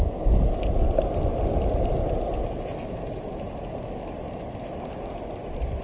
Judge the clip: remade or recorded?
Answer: recorded